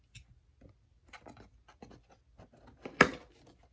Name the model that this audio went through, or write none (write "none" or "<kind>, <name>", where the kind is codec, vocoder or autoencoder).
none